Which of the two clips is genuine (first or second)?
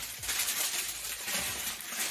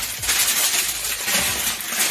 second